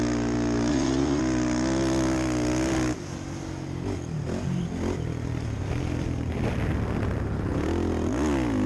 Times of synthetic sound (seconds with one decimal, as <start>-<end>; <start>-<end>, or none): 0.7-1.2